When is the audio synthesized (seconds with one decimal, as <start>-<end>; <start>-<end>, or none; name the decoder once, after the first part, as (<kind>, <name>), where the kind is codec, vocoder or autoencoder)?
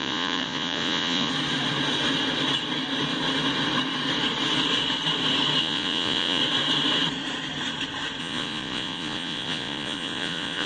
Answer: 0.0-1.3 (vocoder, Vocos); 5.6-6.4; 8.2-10.7